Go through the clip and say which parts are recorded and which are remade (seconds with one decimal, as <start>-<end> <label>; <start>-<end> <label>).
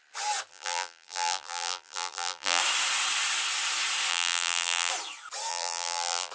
0.0-0.5 recorded; 0.5-2.6 remade; 2.6-4.1 recorded; 4.1-4.9 remade; 4.9-5.5 recorded; 5.5-6.3 remade